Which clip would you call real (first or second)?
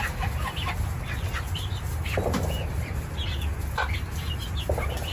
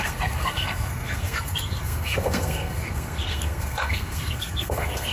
first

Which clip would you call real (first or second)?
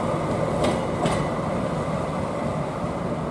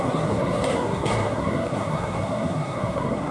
first